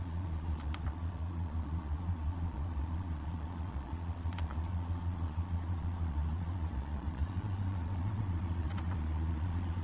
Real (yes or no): no